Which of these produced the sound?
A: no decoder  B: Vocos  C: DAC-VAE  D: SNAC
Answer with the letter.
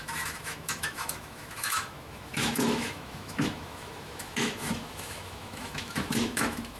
C